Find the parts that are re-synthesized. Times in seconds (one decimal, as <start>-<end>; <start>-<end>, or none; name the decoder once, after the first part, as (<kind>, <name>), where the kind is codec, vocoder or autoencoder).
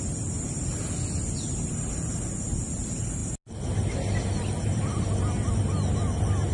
none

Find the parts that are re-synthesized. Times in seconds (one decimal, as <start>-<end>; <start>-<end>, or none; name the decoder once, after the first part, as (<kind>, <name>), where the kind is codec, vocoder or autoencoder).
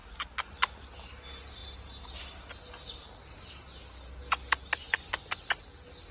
0.0-0.8 (vocoder, Vocos); 4.8-5.5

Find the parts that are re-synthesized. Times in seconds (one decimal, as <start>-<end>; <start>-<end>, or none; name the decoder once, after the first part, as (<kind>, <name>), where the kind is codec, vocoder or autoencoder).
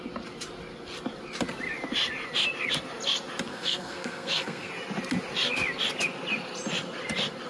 3.5-4.7 (codec, SNAC)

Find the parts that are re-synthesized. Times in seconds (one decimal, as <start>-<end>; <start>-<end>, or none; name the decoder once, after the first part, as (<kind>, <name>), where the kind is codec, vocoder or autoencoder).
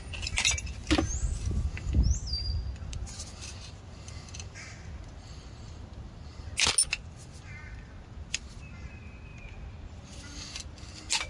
none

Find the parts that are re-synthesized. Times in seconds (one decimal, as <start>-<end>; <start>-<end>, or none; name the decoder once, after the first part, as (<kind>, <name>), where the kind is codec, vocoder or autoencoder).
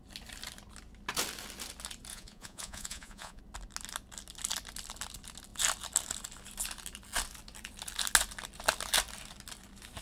2.1-3.4 (vocoder, Vocos)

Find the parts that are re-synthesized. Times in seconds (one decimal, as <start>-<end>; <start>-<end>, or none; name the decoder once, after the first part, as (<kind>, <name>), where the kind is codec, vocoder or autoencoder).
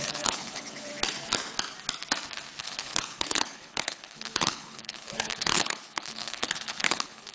0.0-0.9 (codec, HILCodec); 2.6-7.3